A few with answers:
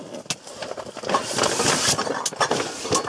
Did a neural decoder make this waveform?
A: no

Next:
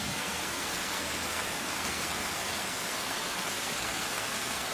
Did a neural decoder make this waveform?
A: yes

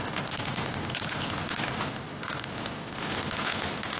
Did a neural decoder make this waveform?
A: no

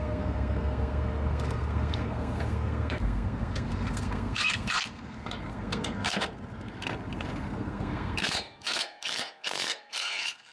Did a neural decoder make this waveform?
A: yes